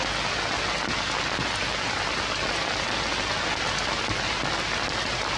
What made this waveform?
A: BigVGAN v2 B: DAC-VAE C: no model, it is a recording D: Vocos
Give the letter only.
C